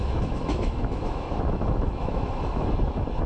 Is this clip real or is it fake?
fake